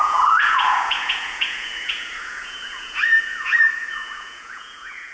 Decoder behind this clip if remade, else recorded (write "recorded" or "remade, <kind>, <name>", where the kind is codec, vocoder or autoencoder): remade, vocoder, Vocos